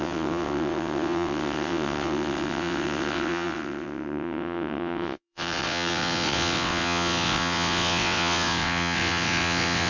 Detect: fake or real fake